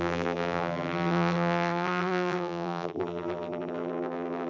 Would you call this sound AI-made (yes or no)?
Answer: yes